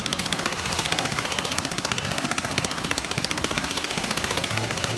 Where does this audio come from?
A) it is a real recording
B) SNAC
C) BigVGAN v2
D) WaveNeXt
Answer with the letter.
B